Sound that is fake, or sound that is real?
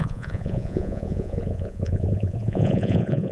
fake